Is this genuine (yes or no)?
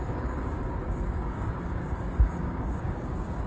no